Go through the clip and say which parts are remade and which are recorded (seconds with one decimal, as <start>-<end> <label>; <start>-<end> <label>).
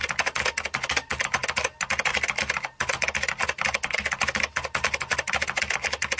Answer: 0.0-6.2 recorded